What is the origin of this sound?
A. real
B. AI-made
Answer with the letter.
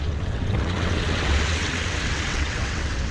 B